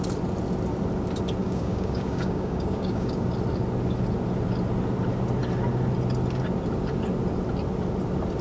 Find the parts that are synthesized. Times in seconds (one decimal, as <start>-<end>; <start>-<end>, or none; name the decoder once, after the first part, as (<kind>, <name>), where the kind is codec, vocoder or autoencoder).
1.4-3.3 (codec, DAC)